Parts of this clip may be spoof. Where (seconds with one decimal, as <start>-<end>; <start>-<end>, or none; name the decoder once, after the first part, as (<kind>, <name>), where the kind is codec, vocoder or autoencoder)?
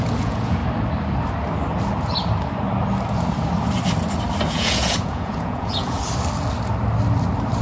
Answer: 0.0-0.6 (vocoder, Vocos); 4.5-6.0